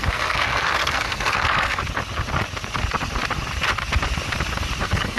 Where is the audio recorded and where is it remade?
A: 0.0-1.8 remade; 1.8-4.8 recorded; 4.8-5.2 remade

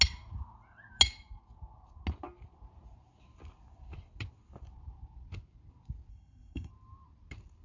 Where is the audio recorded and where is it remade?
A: 0.0-6.1 recorded; 6.1-6.7 remade; 6.7-7.6 recorded

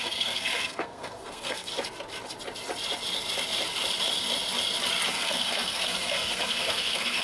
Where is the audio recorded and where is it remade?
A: 0.0-1.7 remade; 1.7-5.1 recorded; 5.1-7.2 remade

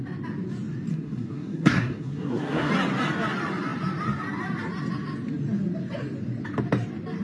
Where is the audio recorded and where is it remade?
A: 0.0-0.9 recorded; 0.9-2.7 remade; 2.7-7.2 recorded